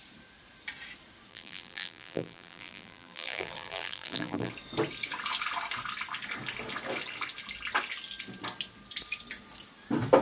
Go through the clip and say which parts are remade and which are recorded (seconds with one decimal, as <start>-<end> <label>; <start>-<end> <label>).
0.0-1.3 recorded; 1.3-4.5 remade; 4.5-10.2 recorded